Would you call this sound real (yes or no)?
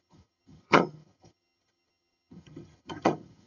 no